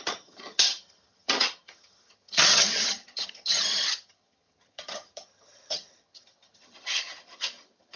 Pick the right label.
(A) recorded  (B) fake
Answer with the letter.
B